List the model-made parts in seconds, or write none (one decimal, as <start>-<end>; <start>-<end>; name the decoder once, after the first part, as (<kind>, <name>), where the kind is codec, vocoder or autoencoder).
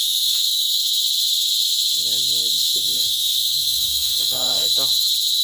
0.0-0.8 (autoencoder, DAC-VAE); 2.5-4.7